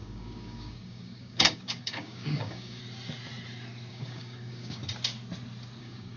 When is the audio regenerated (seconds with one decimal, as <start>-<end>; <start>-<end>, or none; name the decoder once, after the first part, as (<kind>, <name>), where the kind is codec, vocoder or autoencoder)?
0.0-2.8 (codec, DAC); 3.9-4.8; 5.8-6.2